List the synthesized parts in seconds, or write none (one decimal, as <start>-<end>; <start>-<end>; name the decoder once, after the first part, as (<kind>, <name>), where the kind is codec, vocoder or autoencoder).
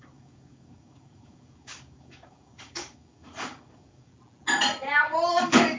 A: 0.0-4.1 (codec, DAC); 5.3-5.8